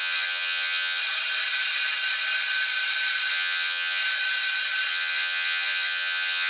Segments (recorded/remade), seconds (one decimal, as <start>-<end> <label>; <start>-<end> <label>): 0.0-1.0 remade; 1.0-3.3 recorded; 3.3-4.0 remade; 4.0-4.9 recorded; 4.9-6.5 remade